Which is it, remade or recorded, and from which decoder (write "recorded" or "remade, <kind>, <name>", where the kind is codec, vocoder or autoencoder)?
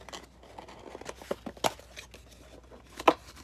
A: recorded